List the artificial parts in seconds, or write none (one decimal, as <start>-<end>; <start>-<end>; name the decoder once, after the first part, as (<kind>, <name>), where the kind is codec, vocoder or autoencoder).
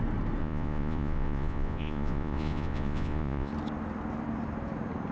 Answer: 0.4-3.5 (vocoder, Vocos)